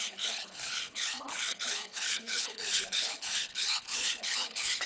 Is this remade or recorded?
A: remade